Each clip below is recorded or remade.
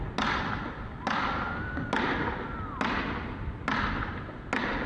recorded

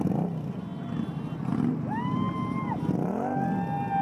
recorded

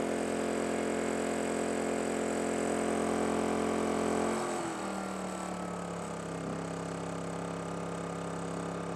recorded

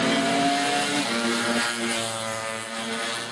recorded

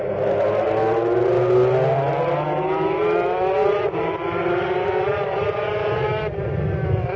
recorded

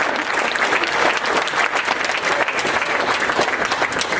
recorded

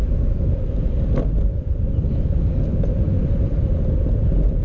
recorded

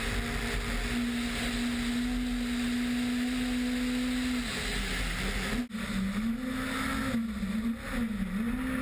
recorded